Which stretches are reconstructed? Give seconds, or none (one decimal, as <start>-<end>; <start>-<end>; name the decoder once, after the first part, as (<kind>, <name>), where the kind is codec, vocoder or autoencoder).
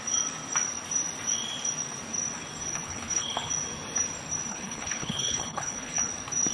2.7-3.5 (codec, HILCodec); 4.5-6.1